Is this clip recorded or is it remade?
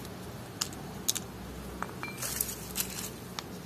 recorded